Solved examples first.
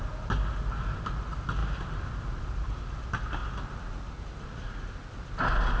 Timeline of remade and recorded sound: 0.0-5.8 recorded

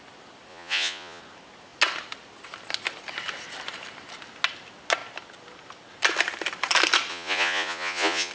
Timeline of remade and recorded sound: 0.0-0.5 recorded; 0.5-1.2 remade; 1.2-7.1 recorded; 7.1-8.3 remade

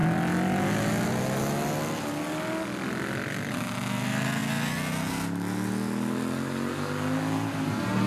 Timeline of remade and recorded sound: 0.0-8.1 recorded